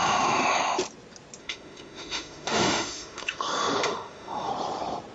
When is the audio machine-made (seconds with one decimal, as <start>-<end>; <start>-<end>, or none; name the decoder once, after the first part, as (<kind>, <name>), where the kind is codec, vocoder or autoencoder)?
1.4-4.5 (autoencoder, DAC-VAE)